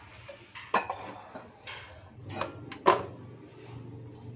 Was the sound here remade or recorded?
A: recorded